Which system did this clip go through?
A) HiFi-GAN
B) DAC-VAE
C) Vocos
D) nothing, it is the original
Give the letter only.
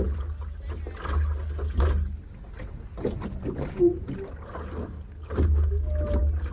D